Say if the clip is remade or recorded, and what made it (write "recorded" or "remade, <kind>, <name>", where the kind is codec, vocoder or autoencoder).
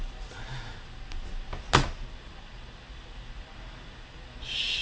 recorded